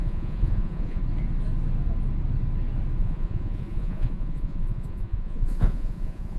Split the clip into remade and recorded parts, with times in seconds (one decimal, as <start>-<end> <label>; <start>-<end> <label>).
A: 0.0-1.0 remade; 1.0-3.0 recorded; 3.0-6.4 remade